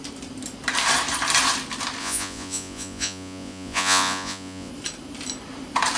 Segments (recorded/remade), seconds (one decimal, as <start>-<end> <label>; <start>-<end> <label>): 0.0-2.0 recorded; 2.0-4.7 remade; 4.7-6.0 recorded